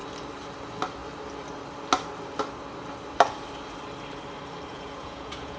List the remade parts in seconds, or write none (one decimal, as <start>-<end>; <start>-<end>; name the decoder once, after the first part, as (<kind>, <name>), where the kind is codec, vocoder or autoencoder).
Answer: 4.7-5.6 (vocoder, Vocos)